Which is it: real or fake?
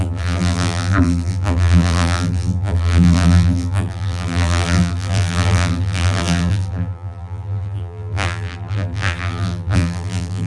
fake